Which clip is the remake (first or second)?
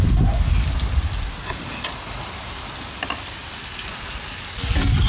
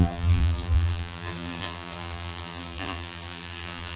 second